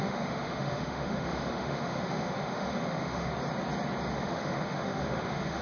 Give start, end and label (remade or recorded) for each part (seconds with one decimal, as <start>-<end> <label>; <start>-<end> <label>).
0.0-3.3 remade; 3.3-4.1 recorded; 4.1-5.6 remade